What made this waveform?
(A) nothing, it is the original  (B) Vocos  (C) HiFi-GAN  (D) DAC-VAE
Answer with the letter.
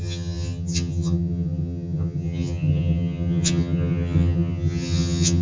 C